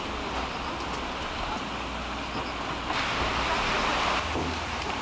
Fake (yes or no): no